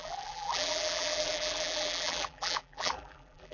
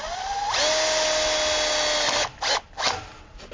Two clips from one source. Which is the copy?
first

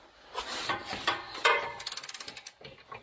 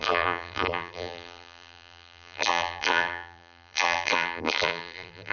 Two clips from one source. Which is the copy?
second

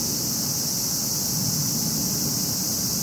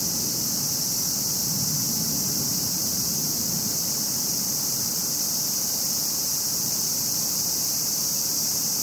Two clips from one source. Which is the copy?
second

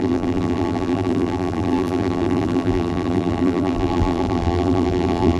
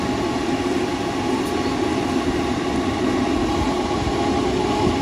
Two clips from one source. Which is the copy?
first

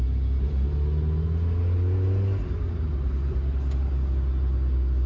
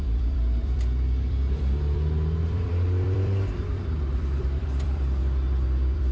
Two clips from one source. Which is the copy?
second